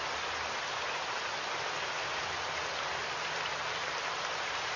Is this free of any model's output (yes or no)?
yes